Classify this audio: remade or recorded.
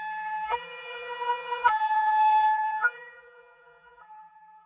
remade